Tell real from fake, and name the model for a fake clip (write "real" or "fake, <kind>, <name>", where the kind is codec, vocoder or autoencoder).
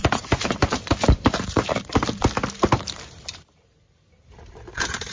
fake, vocoder, BigVGAN v2